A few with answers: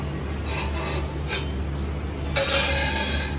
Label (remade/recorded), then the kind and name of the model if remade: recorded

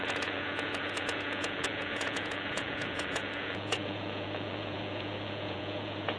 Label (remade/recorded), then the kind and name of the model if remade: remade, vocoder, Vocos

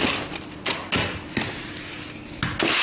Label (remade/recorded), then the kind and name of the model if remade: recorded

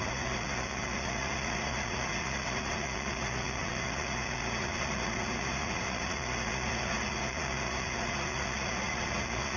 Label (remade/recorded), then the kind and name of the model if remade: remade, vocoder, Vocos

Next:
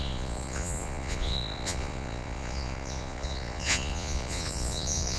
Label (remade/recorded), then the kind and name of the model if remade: remade, vocoder, Vocos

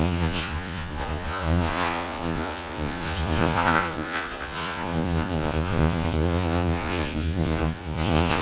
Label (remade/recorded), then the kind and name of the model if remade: remade, vocoder, Vocos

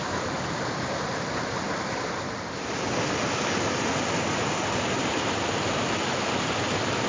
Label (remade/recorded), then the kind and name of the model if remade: recorded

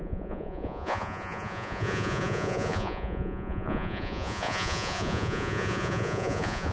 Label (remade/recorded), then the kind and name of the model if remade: remade, vocoder, Vocos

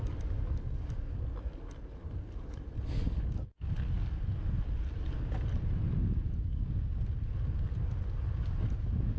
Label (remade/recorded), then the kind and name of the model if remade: recorded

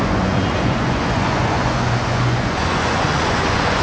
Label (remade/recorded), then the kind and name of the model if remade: remade, vocoder, Vocos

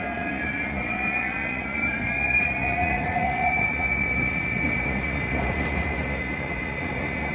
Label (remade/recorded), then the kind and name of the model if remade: remade, vocoder, Vocos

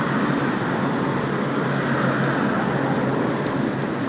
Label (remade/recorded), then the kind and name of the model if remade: recorded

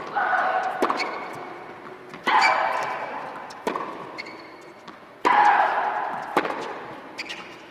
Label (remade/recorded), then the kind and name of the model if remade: recorded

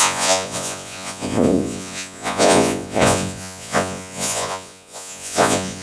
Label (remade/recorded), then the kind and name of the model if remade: remade, vocoder, Vocos